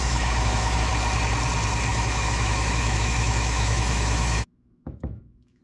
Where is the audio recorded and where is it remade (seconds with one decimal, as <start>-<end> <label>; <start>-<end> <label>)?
0.0-0.9 remade; 0.9-1.9 recorded; 1.9-5.6 remade